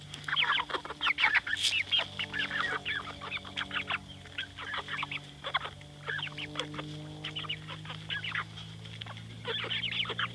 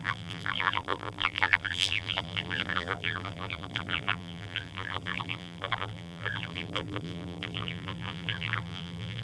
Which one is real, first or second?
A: first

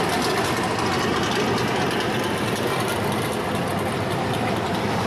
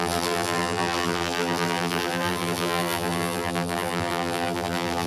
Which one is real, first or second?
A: first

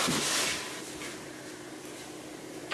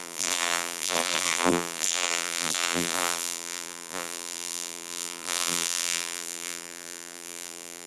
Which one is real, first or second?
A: first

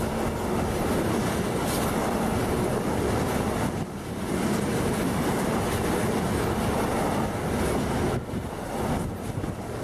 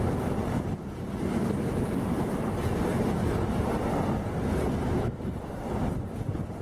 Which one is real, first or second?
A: first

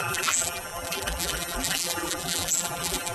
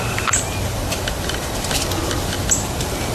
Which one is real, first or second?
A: second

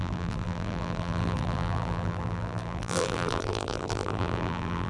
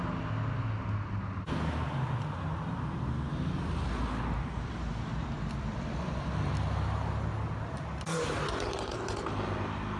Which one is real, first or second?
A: second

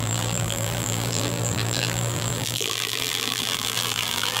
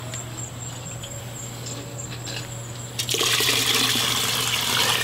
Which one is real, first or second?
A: second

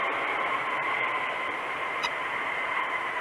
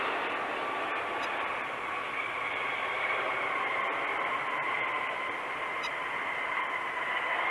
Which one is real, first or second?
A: second